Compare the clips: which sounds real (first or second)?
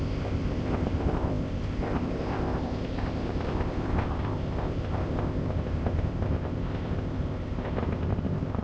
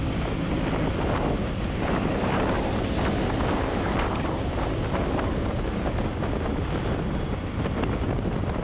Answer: second